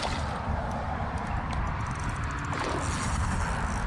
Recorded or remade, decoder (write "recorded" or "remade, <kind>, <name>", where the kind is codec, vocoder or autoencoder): recorded